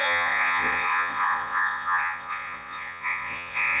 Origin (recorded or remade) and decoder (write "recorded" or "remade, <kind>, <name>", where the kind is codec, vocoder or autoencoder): remade, vocoder, Vocos